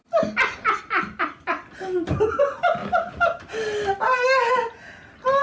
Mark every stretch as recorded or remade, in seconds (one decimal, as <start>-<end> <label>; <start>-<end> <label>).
0.0-5.4 recorded